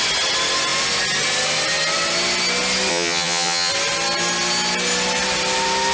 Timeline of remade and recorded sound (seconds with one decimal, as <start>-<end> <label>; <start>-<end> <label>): 0.0-2.9 recorded; 2.9-3.7 remade; 3.7-5.9 recorded